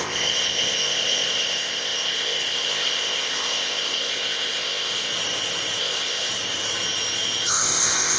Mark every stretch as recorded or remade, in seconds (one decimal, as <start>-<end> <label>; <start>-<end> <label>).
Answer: 0.0-5.1 remade; 5.1-5.8 recorded; 5.8-6.3 remade; 6.3-7.5 recorded; 7.5-8.2 remade